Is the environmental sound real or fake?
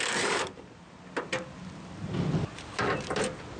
real